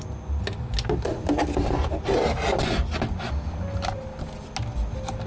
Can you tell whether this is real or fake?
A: real